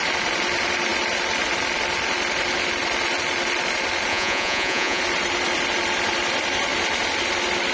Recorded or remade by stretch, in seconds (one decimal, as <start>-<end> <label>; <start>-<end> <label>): 0.0-4.1 recorded; 4.1-5.0 remade; 5.0-7.7 recorded